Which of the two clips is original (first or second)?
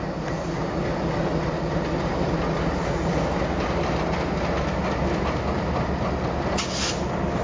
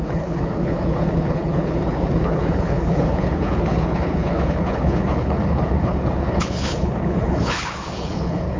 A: first